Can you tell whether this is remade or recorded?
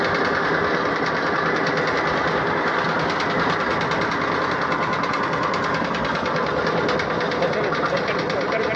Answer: recorded